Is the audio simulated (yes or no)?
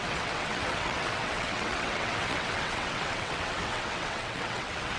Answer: yes